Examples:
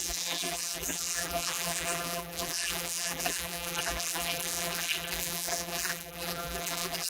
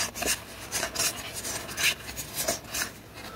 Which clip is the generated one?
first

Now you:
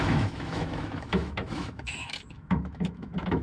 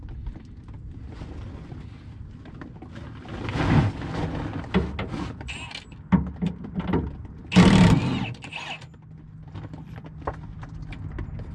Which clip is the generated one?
first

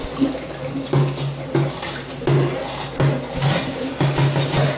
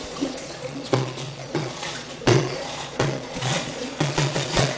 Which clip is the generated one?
second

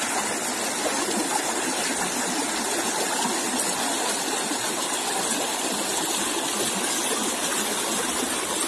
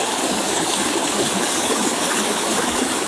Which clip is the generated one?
second